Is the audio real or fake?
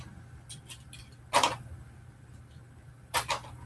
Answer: real